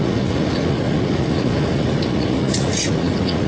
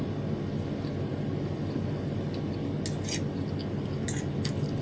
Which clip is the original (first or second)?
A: second